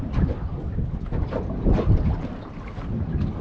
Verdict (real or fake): real